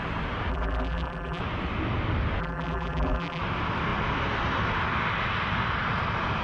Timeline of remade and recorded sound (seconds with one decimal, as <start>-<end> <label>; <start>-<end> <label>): 0.0-0.5 recorded; 0.5-1.4 remade; 1.4-2.4 recorded; 2.4-3.4 remade; 3.4-6.4 recorded